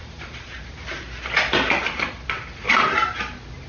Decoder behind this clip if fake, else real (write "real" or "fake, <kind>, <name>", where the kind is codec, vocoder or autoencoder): real